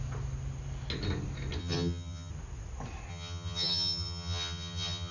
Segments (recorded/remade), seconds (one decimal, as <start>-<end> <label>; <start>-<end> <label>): 0.0-1.6 recorded; 1.6-2.3 remade; 2.3-3.1 recorded; 3.1-5.1 remade

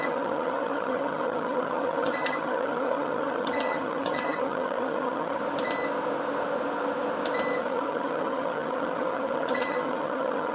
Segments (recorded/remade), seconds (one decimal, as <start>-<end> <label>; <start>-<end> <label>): 0.0-5.4 remade; 5.4-7.6 recorded; 7.6-10.5 remade

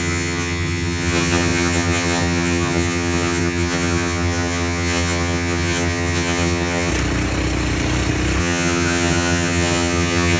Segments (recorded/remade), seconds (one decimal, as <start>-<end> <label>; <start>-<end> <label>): 0.0-6.9 remade; 6.9-8.4 recorded; 8.4-10.4 remade

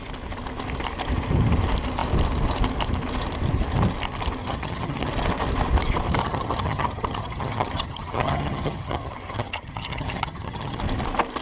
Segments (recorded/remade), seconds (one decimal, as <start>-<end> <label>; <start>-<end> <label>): 0.0-4.4 recorded; 4.4-5.1 remade; 5.1-6.2 recorded; 6.2-10.8 remade; 10.8-11.4 recorded

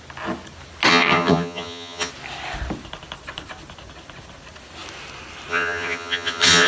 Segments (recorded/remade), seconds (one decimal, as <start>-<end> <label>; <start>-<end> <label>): 0.0-0.9 recorded; 0.9-2.1 remade; 2.1-5.5 recorded; 5.5-6.7 remade

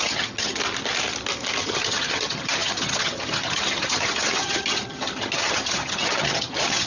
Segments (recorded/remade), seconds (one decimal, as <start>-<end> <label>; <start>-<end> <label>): 0.0-0.6 remade; 0.6-1.6 recorded; 1.6-6.9 remade

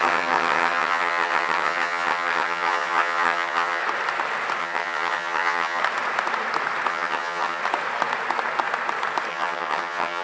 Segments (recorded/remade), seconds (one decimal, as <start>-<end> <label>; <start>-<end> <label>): 0.0-3.8 remade; 3.8-4.6 recorded; 4.6-5.8 remade; 5.8-6.9 recorded; 6.9-7.6 remade; 7.6-9.3 recorded; 9.3-10.2 remade